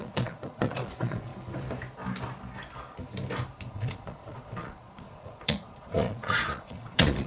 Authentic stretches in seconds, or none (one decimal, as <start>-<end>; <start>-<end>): 1.3-3.7